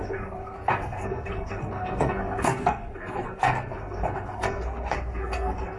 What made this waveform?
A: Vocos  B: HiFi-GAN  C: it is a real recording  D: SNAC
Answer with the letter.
D